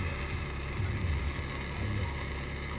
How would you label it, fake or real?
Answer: real